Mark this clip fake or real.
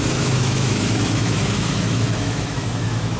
fake